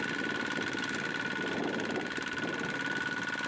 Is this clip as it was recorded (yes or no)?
yes